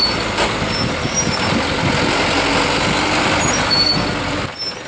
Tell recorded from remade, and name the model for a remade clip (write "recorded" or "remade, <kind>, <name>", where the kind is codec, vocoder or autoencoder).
recorded